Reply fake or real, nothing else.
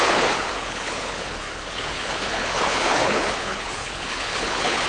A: fake